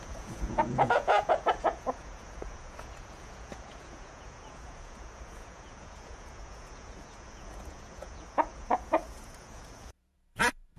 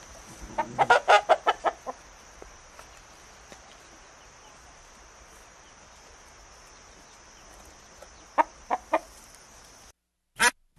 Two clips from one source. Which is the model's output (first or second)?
first